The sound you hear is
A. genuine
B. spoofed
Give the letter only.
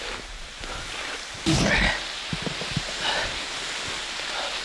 A